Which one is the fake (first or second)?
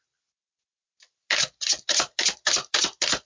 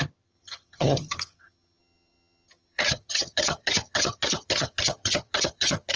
second